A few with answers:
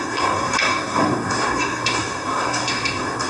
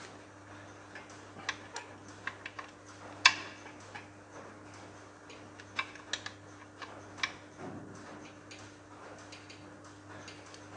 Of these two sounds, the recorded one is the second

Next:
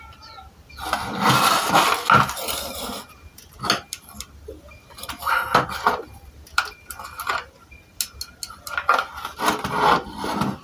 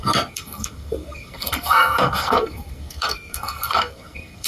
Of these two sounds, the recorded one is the first